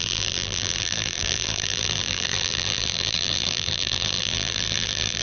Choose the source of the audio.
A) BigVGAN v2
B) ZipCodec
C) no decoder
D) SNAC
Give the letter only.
A